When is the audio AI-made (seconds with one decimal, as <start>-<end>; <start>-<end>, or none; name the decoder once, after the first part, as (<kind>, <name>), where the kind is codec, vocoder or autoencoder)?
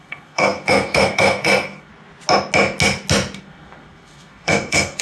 0.0-1.9 (codec, SNAC); 3.4-5.0